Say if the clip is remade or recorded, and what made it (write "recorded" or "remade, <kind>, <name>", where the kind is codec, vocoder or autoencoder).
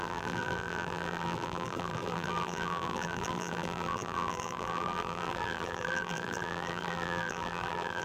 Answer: remade, vocoder, BigVGAN v2